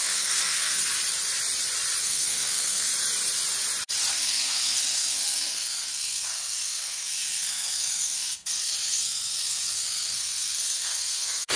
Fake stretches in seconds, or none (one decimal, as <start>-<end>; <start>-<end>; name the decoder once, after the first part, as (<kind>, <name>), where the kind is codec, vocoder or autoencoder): 0.0-0.8 (codec, SNAC); 2.0-2.9; 4.1-11.6

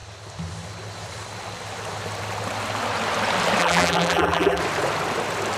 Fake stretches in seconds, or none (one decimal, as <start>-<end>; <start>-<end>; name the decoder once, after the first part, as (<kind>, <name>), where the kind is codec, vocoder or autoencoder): 3.6-4.6 (vocoder, BigVGAN v2)

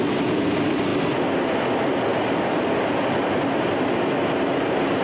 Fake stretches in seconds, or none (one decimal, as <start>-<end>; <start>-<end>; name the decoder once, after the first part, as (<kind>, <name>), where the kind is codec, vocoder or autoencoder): none

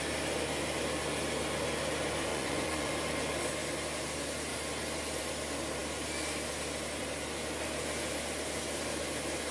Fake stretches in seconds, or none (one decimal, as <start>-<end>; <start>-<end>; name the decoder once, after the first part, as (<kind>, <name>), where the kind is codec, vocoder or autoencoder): 2.3-2.9 (vocoder, Vocos)

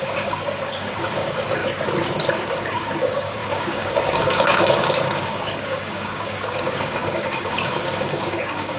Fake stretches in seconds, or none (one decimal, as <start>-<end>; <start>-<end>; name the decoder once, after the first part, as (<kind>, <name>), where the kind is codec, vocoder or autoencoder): 0.0-1.6 (codec, DAC); 2.3-8.8

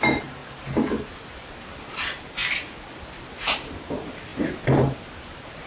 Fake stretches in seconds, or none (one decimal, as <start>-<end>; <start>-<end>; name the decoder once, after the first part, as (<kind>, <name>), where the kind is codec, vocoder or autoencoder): 0.0-0.4 (vocoder, BigVGAN v2); 1.5-2.4; 3.3-5.7